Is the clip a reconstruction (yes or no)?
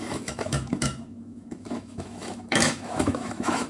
yes